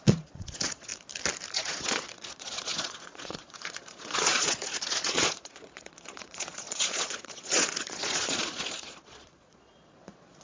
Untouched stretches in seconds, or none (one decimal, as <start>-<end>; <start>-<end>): 0.9-1.5